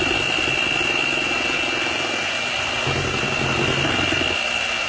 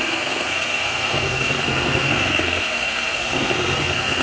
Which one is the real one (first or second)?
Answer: first